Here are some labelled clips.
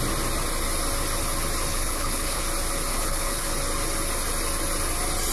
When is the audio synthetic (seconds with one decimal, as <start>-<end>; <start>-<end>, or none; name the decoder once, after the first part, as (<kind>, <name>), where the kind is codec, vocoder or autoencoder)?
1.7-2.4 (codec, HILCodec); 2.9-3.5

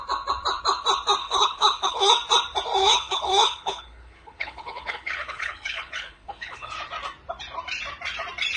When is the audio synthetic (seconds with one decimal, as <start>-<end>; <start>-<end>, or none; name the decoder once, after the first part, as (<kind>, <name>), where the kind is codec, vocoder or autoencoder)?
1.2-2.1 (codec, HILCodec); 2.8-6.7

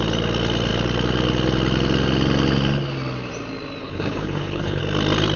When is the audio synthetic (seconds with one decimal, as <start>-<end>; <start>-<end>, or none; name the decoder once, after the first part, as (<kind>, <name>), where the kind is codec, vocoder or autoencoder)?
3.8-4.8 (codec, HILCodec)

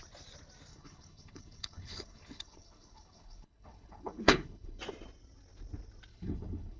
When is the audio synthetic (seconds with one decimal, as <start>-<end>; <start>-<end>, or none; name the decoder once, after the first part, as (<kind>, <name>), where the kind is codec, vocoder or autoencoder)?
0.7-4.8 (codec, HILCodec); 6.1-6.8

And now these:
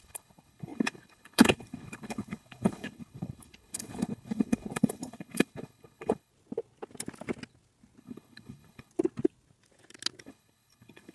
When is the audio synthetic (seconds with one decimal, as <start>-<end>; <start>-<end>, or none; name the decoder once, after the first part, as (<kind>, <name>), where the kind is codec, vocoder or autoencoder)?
0.0-6.3 (codec, HILCodec); 8.0-8.9; 10.2-11.1